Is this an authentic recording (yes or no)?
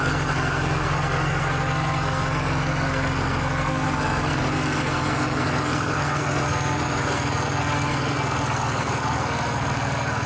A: no